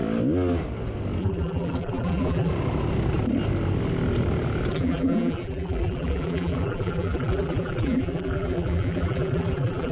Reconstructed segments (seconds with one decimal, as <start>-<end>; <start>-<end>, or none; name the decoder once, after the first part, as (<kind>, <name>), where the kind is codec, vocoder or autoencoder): 1.2-2.5 (vocoder, BigVGAN v2); 4.7-9.9